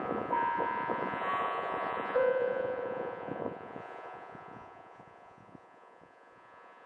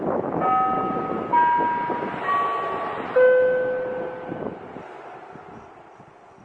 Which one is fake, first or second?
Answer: first